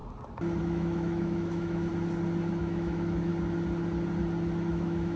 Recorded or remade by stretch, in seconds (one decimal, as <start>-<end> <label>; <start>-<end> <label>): 0.0-0.6 recorded; 0.6-1.9 remade; 1.9-2.6 recorded; 2.6-3.3 remade; 3.3-4.7 recorded; 4.7-5.2 remade